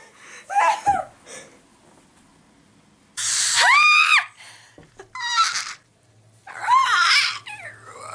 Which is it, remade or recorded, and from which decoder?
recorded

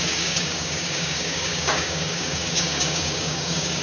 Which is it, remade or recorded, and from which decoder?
remade, codec, DAC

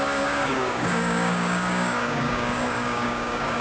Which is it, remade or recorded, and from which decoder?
remade, codec, DAC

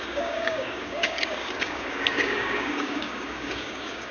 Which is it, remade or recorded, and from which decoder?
remade, codec, DAC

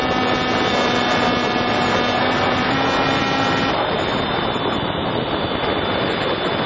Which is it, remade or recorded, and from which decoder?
recorded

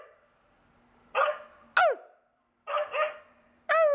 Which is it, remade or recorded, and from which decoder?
recorded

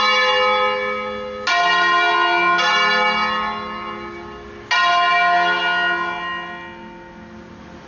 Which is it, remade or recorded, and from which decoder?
recorded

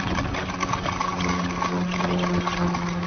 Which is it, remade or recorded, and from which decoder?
recorded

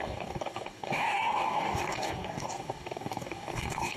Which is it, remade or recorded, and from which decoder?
remade, codec, DAC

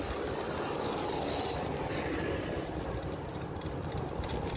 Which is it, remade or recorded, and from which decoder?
recorded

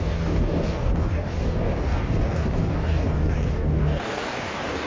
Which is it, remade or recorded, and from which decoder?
remade, codec, DAC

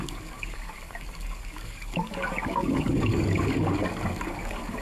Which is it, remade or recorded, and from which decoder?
remade, codec, DAC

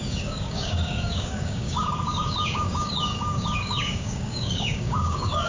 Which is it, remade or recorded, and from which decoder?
remade, codec, DAC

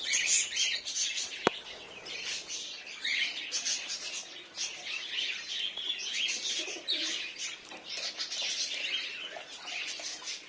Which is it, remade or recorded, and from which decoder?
recorded